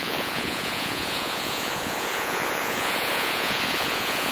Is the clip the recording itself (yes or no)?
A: no